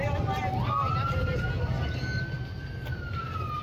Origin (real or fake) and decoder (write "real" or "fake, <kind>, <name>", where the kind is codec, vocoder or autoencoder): real